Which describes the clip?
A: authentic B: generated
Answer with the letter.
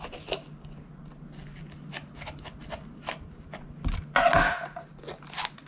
A